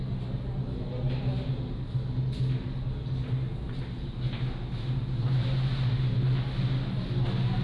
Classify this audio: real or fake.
real